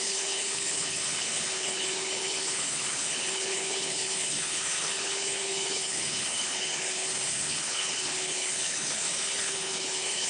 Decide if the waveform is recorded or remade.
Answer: remade